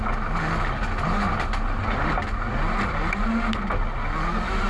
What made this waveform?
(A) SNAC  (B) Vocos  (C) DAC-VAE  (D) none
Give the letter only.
D